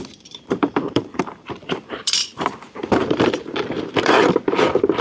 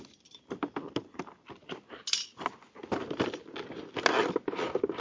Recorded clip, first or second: second